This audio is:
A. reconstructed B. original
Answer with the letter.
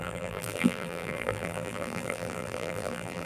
A